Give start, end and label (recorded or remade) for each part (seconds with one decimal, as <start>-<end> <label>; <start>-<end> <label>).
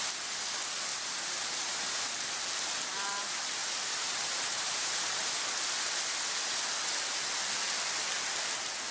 0.0-0.9 recorded; 0.9-2.1 remade; 2.1-3.6 recorded; 3.6-5.4 remade; 5.4-8.9 recorded